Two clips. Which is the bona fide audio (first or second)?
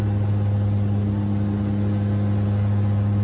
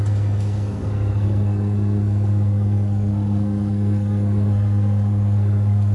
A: first